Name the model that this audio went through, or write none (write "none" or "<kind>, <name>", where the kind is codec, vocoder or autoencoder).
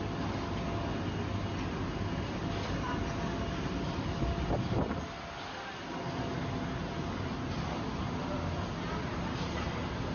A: none